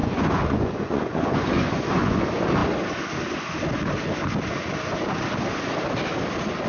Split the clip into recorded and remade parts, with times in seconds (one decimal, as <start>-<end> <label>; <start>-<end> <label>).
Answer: 0.0-2.2 remade; 2.2-6.7 recorded